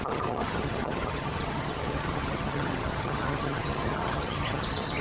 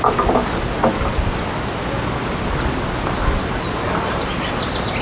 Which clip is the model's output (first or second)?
first